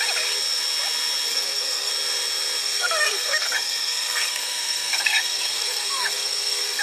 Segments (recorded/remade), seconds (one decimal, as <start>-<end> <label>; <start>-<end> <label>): 0.0-1.3 recorded; 1.3-1.9 remade; 1.9-2.6 recorded; 2.6-6.8 remade